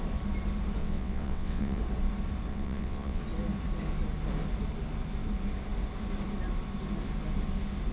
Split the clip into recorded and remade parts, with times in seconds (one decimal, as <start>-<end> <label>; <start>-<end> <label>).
0.0-0.8 recorded; 0.8-1.8 remade; 1.8-2.5 recorded; 2.5-3.2 remade; 3.2-7.9 recorded